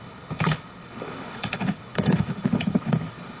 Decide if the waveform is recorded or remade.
remade